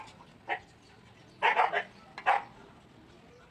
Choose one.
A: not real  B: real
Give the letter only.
B